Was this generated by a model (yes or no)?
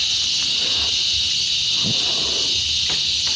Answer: no